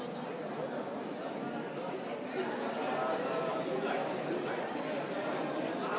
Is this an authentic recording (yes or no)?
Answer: yes